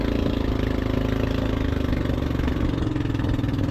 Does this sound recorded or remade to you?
recorded